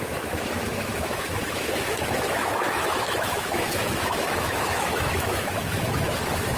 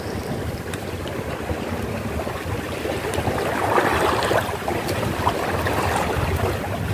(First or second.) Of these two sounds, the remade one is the first